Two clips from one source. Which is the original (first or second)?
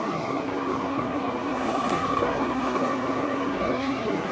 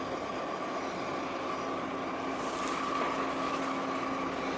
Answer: second